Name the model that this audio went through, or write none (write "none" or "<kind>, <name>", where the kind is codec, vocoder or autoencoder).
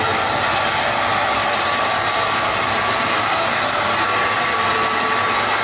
none